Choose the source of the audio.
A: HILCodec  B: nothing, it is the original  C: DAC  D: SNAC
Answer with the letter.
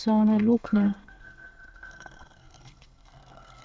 D